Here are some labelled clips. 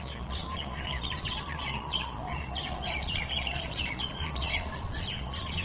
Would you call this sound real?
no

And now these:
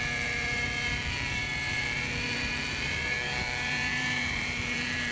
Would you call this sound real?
no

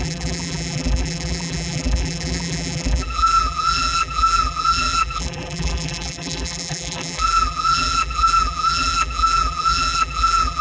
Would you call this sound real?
no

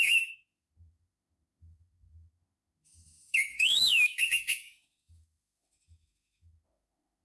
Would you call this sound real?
no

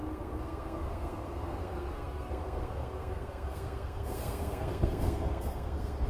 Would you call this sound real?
no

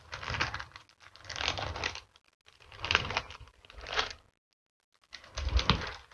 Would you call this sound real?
yes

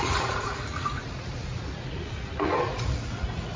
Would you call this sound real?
no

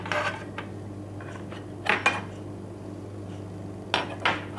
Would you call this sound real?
yes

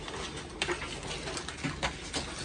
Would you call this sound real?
yes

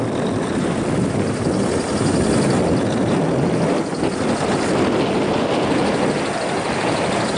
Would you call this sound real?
yes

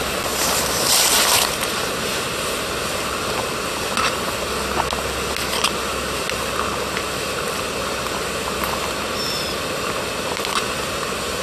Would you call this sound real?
yes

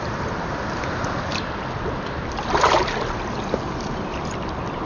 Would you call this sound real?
yes